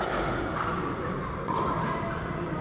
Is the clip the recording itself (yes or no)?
no